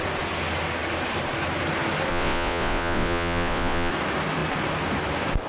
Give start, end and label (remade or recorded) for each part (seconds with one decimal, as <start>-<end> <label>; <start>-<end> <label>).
0.0-2.1 recorded; 2.1-3.9 remade; 3.9-5.5 recorded